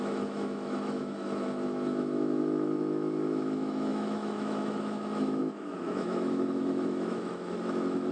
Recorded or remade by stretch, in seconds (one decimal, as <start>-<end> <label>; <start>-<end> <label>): 0.0-8.1 remade